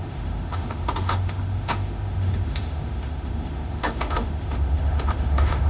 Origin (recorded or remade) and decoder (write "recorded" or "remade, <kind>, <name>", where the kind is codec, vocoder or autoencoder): remade, autoencoder, DAC-VAE